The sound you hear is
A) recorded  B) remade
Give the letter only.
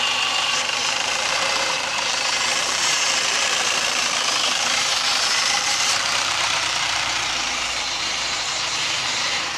B